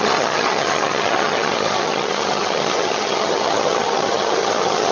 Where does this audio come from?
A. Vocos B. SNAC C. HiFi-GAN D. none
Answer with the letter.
C